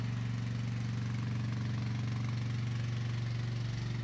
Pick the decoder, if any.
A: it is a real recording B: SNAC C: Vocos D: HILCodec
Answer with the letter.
A